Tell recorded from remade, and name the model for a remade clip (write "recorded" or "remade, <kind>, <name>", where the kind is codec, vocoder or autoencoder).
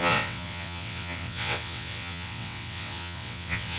remade, vocoder, WaveNeXt